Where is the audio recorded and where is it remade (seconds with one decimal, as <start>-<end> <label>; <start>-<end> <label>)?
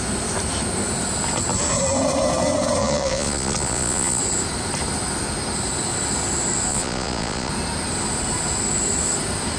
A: 0.0-2.8 recorded; 2.8-4.2 remade; 4.2-6.7 recorded; 6.7-7.5 remade; 7.5-9.6 recorded